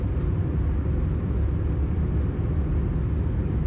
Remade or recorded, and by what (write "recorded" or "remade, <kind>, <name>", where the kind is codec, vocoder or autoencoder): recorded